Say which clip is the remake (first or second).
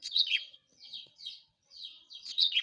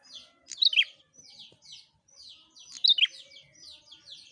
first